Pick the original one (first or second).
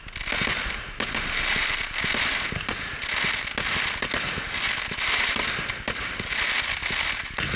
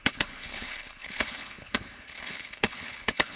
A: first